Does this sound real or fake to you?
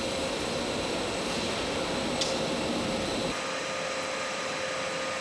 real